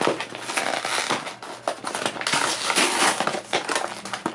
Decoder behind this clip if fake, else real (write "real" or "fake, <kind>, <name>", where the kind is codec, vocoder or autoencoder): real